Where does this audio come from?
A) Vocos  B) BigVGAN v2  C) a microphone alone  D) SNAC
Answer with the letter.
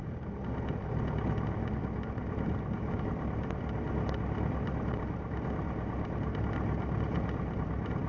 B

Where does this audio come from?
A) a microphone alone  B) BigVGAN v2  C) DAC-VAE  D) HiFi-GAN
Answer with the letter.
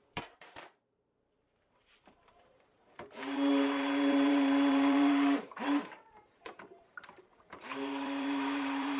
B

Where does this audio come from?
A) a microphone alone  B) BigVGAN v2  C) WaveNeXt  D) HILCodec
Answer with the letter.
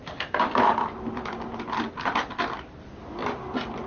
A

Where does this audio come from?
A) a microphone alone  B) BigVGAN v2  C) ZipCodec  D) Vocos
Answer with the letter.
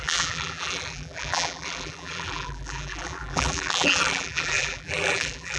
B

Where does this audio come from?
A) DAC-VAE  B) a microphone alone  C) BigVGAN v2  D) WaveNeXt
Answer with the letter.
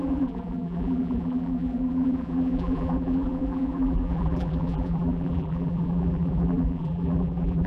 C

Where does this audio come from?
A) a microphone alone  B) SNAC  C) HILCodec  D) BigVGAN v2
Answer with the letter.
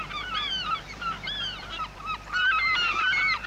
D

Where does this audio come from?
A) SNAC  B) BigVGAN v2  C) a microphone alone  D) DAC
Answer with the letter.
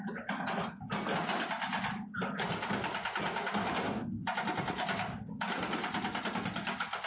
C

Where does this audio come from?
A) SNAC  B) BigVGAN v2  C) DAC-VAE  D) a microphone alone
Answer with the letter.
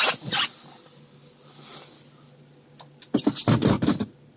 D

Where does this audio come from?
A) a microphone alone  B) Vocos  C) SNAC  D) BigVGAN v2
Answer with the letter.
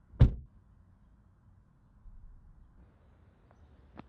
A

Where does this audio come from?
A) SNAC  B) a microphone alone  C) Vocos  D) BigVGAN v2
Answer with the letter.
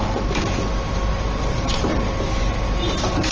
D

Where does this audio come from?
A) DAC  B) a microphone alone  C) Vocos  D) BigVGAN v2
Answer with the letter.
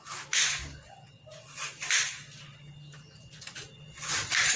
B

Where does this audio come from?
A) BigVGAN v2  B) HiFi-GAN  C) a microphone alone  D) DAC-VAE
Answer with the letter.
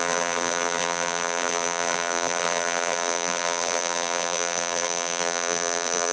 A